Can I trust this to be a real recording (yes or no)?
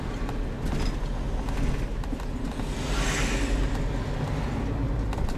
yes